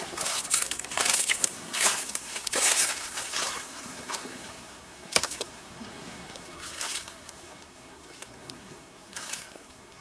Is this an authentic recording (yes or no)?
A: no